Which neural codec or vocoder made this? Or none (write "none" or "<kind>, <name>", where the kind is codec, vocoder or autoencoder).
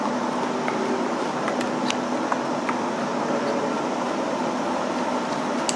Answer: none